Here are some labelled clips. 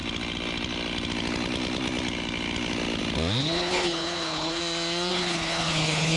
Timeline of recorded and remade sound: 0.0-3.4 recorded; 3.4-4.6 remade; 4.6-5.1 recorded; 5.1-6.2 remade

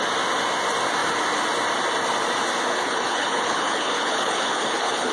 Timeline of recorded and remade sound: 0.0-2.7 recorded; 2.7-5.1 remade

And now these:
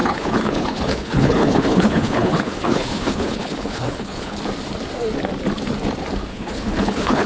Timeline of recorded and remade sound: 0.0-4.4 remade; 4.4-6.3 recorded; 6.3-7.3 remade

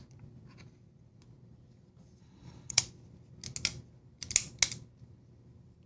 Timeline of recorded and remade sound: 0.0-2.2 recorded; 2.2-2.8 remade; 2.8-5.9 recorded

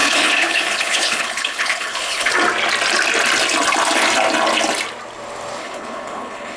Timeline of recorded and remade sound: 0.0-2.3 remade; 2.3-5.6 recorded; 5.6-6.6 remade

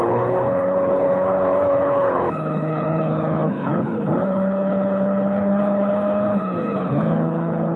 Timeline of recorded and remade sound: 0.0-7.8 remade

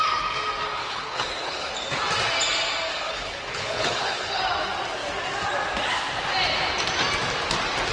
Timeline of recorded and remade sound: 0.0-0.8 recorded; 0.8-1.7 remade; 1.7-2.9 recorded; 2.9-4.4 remade; 4.4-7.9 recorded